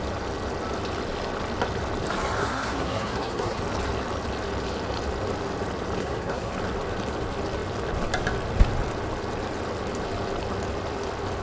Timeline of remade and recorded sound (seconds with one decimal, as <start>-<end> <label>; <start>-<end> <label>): 0.0-2.4 recorded; 2.4-3.6 remade; 3.6-6.0 recorded; 6.0-6.5 remade; 6.5-11.4 recorded